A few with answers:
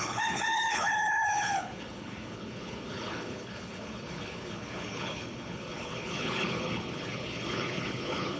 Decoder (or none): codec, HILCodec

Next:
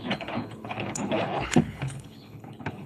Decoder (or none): codec, HILCodec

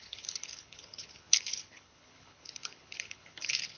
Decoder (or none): codec, HILCodec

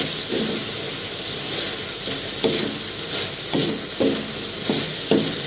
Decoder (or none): none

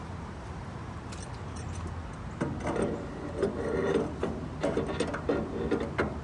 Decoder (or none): none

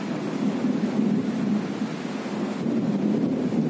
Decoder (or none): none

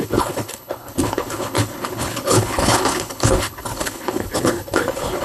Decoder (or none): codec, HILCodec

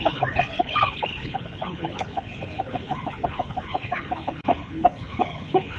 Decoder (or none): codec, HILCodec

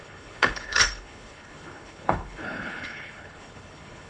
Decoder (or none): codec, HILCodec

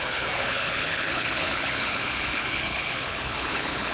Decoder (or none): codec, HILCodec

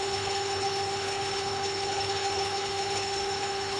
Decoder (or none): codec, HILCodec